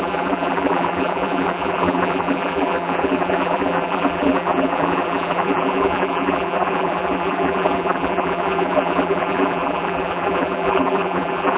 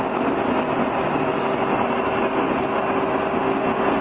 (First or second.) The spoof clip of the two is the first